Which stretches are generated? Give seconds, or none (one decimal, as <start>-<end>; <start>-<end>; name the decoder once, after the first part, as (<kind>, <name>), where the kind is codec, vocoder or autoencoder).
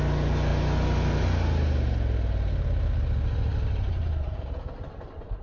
3.5-5.4 (vocoder, BigVGAN v2)